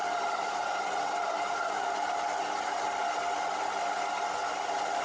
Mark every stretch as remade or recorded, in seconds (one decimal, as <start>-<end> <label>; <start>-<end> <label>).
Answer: 0.0-5.0 recorded